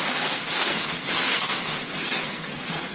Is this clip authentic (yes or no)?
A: no